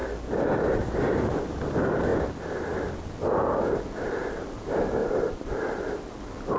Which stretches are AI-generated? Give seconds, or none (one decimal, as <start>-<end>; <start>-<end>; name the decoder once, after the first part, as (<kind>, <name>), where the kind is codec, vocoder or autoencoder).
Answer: 5.0-5.6 (vocoder, BigVGAN v2)